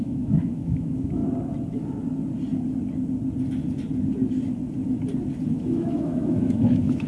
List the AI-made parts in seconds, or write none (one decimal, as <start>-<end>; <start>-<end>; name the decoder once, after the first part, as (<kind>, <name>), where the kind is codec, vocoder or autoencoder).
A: 0.0-1.2 (autoencoder, DAC-VAE); 5.5-7.1